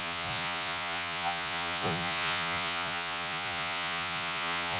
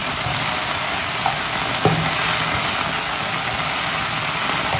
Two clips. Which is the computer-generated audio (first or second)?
first